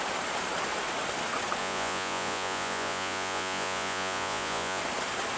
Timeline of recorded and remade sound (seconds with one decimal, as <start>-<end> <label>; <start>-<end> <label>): 0.0-1.6 recorded; 1.6-4.8 remade; 4.8-5.4 recorded